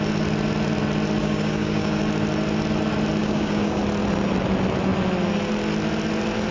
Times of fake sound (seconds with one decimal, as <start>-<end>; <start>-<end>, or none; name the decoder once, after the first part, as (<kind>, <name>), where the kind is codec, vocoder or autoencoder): 1.2-2.0 (codec, DAC); 3.2-3.8